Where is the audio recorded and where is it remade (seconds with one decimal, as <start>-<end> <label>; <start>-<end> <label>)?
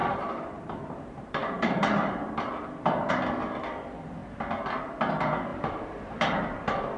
0.0-3.1 remade; 3.1-5.5 recorded; 5.5-6.4 remade; 6.4-7.0 recorded